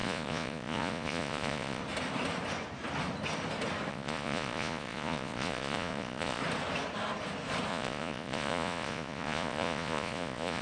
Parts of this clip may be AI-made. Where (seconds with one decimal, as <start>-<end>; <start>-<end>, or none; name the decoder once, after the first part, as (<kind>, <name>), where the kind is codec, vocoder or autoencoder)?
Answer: 0.0-1.8 (vocoder, Vocos); 3.9-6.4; 7.7-10.6